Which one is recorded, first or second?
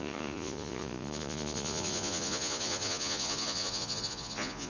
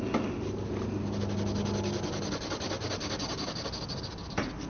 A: second